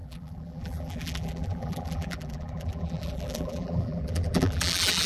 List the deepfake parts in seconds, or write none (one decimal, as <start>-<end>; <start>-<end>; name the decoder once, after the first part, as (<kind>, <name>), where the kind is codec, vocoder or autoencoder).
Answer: 0.0-5.1 (vocoder, BigVGAN v2)